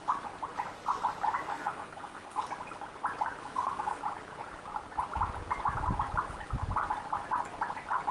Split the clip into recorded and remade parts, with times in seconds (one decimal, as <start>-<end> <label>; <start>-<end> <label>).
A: 0.0-1.5 recorded; 1.5-2.4 remade; 2.4-3.4 recorded; 3.4-4.0 remade; 4.0-8.1 recorded